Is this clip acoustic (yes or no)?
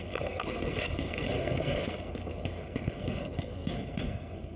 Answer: no